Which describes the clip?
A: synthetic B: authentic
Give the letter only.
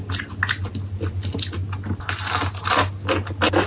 B